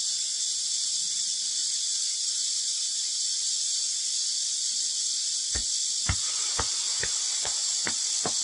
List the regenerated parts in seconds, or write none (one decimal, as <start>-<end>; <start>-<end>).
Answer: 1.6-3.2